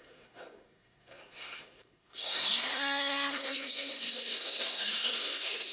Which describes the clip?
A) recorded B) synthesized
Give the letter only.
B